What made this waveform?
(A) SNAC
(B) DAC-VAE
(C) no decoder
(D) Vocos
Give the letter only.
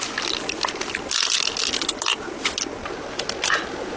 C